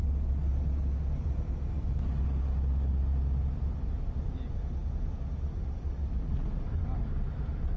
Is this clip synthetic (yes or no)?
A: no